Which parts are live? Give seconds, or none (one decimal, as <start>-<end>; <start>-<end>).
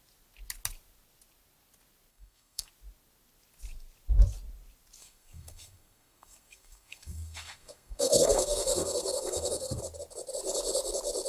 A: 0.0-2.1; 2.7-5.0; 9.8-11.3